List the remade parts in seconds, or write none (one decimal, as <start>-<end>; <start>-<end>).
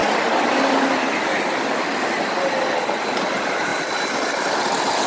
0.0-0.7; 3.7-4.5